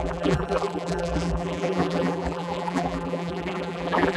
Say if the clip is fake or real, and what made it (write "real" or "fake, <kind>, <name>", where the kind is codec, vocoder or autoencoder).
fake, vocoder, BigVGAN v2